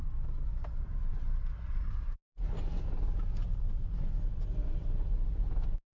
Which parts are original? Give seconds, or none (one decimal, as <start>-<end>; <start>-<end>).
0.0-5.9